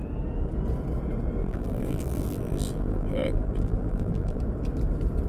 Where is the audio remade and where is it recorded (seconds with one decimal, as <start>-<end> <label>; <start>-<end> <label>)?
0.0-1.4 recorded; 1.4-4.4 remade; 4.4-5.3 recorded